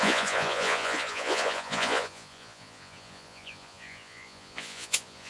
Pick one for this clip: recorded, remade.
remade